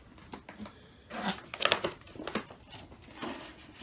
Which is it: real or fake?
real